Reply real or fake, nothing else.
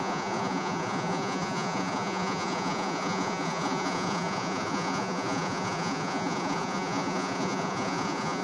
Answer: fake